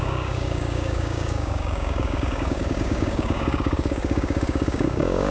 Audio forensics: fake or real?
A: fake